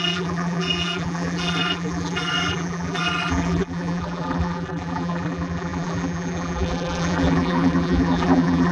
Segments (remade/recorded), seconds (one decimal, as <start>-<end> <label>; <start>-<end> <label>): 0.0-8.7 remade